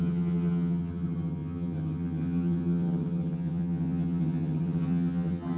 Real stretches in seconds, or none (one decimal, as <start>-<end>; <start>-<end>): none